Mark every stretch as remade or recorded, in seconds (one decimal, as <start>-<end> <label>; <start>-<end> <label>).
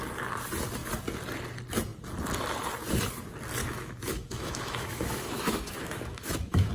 0.0-3.6 recorded; 3.6-6.7 remade